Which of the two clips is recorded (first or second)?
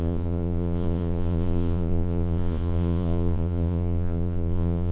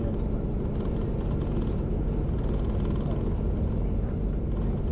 second